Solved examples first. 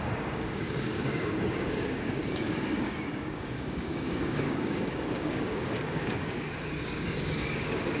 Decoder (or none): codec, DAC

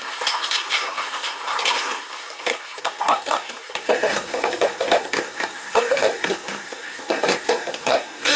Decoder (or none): codec, SNAC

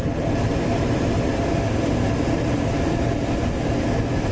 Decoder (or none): none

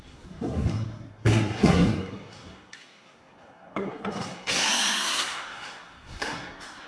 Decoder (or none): codec, SNAC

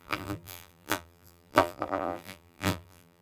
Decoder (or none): vocoder, BigVGAN v2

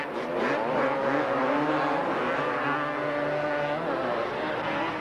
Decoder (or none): none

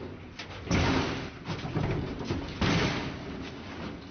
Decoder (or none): none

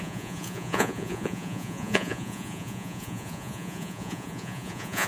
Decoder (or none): vocoder, Vocos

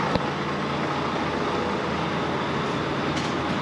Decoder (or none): none